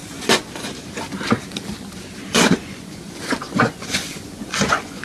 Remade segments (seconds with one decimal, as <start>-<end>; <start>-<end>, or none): 0.0-0.7; 2.2-5.0

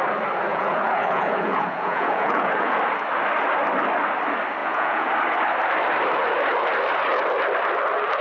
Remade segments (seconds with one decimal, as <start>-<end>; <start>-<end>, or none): 0.5-2.8; 4.6-5.1